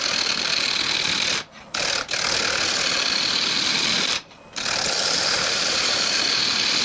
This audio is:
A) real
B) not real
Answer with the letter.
A